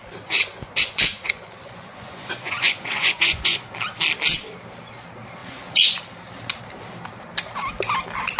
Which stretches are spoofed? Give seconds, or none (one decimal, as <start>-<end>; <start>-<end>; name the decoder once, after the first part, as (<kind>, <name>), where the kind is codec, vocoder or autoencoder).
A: 0.0-3.7 (vocoder, Vocos); 5.4-6.0